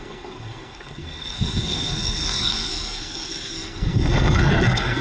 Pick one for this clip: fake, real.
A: fake